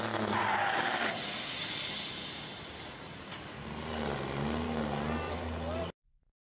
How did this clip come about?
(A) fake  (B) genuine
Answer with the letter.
B